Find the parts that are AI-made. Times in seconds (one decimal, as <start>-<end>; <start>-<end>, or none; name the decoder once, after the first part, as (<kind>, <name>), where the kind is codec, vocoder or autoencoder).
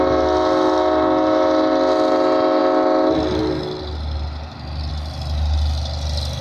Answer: none